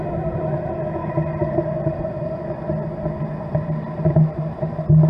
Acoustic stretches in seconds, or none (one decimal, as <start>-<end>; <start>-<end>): 0.0-5.1